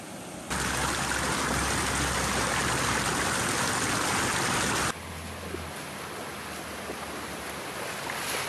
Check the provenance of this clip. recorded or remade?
recorded